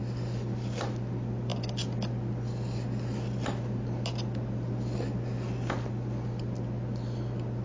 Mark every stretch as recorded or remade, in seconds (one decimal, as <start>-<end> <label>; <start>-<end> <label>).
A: 0.0-7.6 recorded